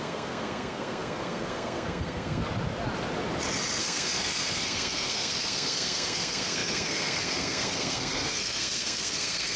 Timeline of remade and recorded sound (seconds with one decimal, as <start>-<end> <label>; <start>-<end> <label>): 0.0-2.4 remade; 2.4-3.8 recorded; 3.8-9.6 remade

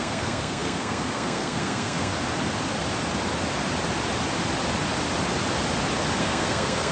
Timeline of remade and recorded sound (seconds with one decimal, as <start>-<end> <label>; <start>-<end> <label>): 0.0-2.1 remade; 2.1-6.2 recorded; 6.2-6.9 remade

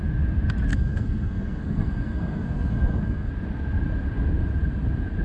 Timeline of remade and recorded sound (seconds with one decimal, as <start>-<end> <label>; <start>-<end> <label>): 0.0-0.7 recorded; 0.7-3.3 remade; 3.3-5.2 recorded

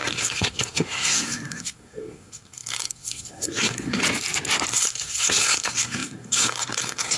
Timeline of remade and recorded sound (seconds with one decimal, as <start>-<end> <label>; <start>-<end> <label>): 0.0-4.0 remade; 4.0-4.7 recorded; 4.7-7.2 remade

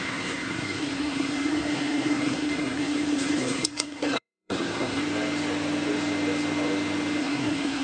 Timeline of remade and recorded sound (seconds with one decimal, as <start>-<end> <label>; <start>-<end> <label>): 0.0-5.0 remade; 5.0-7.2 recorded; 7.2-7.8 remade

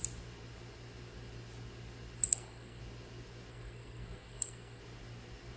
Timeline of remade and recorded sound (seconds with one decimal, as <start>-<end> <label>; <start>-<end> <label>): 0.0-2.3 recorded; 2.3-2.8 remade; 2.8-3.5 recorded; 3.5-4.8 remade; 4.8-5.6 recorded